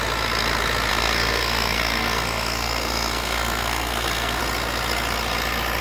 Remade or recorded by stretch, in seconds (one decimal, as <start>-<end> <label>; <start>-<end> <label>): 0.0-0.9 recorded; 0.9-4.4 remade; 4.4-5.8 recorded